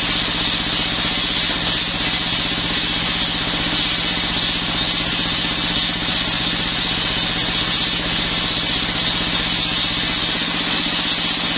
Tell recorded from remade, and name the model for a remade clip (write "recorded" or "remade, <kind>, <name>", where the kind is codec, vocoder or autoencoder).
recorded